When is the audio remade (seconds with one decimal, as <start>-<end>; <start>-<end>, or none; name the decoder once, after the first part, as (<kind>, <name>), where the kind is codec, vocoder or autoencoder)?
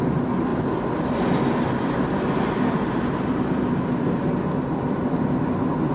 none